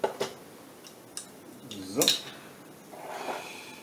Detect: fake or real real